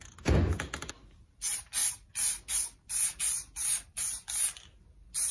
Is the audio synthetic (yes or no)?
no